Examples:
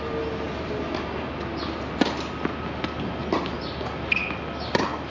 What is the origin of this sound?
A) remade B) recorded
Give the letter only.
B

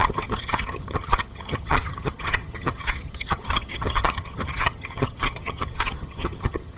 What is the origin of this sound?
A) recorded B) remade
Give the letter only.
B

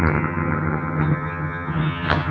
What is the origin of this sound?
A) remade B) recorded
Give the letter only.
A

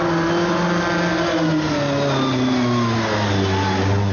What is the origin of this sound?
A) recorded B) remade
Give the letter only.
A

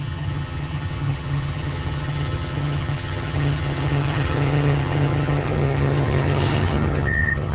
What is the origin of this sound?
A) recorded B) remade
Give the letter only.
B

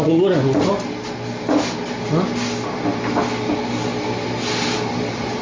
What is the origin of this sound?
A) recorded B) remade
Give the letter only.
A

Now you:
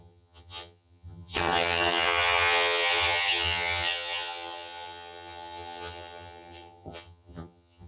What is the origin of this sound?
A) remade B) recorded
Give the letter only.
A